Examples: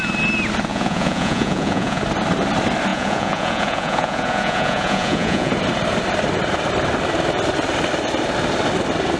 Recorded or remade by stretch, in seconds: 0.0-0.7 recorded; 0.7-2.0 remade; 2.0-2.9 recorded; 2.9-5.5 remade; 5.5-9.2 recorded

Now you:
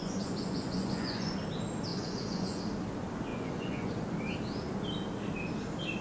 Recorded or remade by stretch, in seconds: 0.0-1.3 remade; 1.3-1.9 recorded; 1.9-2.6 remade; 2.6-3.3 recorded; 3.3-3.9 remade; 3.9-6.0 recorded

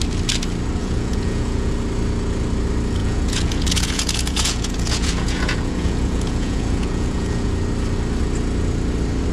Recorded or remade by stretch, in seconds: 0.0-0.8 recorded; 0.8-1.7 remade; 1.7-3.0 recorded; 3.0-7.5 remade; 7.5-9.3 recorded

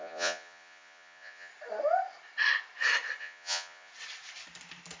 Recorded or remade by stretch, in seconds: 0.0-1.5 remade; 1.5-3.2 recorded; 3.2-3.9 remade; 3.9-5.0 recorded